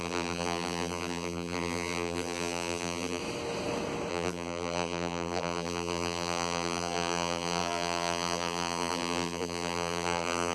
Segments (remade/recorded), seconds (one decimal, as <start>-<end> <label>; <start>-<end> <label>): 0.0-3.2 remade; 3.2-4.1 recorded; 4.1-10.5 remade